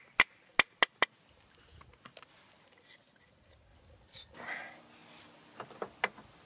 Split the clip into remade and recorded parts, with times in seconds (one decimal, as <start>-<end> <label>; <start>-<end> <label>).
0.0-6.5 recorded